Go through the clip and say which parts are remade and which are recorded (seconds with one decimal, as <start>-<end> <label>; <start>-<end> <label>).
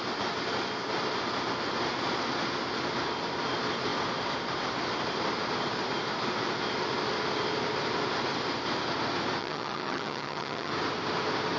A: 0.0-9.4 recorded; 9.4-10.7 remade; 10.7-11.6 recorded